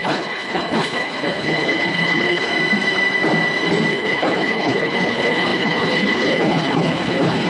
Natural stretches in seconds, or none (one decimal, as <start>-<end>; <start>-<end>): 2.5-3.9